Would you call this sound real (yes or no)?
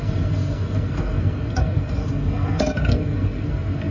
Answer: no